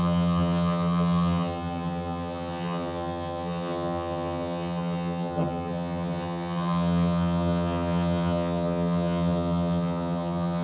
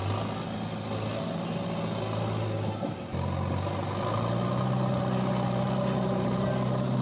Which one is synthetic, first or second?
first